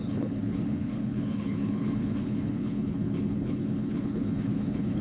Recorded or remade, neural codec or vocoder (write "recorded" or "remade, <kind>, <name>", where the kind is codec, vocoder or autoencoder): remade, codec, HILCodec